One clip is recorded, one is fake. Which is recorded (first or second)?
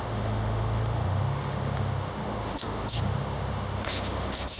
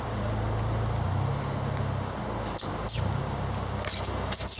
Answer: second